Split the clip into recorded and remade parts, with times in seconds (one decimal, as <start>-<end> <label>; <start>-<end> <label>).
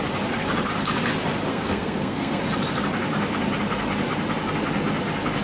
0.0-1.5 recorded; 1.5-2.4 remade; 2.4-5.4 recorded